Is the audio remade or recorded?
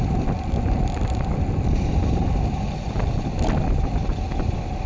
recorded